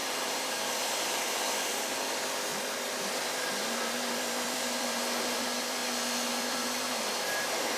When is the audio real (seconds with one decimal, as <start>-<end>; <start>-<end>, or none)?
5.8-6.3